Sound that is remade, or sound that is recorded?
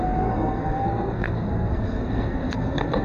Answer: remade